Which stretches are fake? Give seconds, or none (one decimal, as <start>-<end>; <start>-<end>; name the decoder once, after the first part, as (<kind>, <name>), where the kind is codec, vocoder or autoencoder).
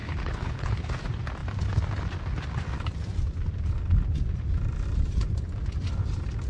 0.0-0.9 (codec, HILCodec)